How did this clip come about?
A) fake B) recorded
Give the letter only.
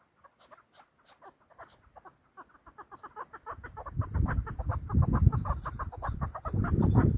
B